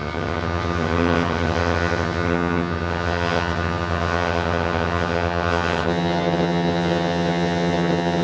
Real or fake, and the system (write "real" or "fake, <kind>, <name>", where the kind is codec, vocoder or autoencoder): fake, vocoder, HiFi-GAN